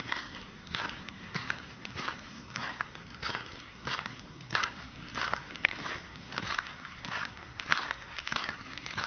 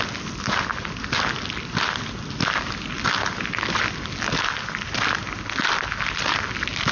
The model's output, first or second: first